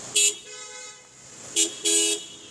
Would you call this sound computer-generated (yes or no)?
no